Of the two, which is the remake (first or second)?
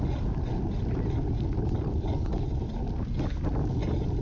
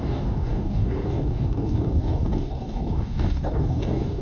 second